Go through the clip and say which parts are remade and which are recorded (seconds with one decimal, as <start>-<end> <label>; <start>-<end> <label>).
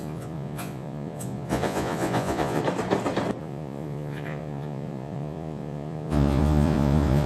0.0-2.6 remade; 2.6-3.4 recorded; 3.4-7.3 remade